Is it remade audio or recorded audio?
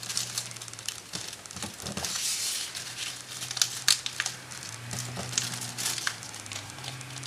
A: recorded